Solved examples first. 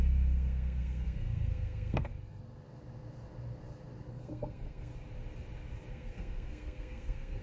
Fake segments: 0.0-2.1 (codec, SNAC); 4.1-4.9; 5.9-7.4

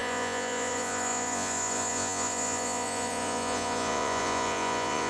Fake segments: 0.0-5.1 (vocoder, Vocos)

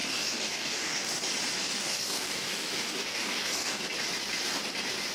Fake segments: 0.0-1.1 (codec, DAC); 1.6-3.8

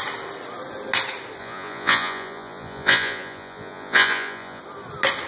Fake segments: 1.4-4.6 (vocoder, Vocos)

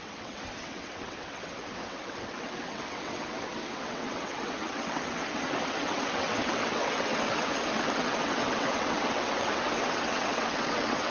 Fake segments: 0.0-11.1 (vocoder, WaveNeXt)

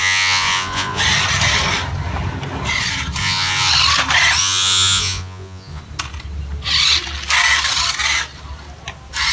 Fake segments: 0.0-1.0 (vocoder, Vocos); 3.2-3.7; 4.4-5.8

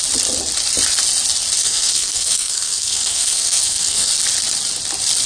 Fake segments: 1.6-4.1 (codec, SNAC)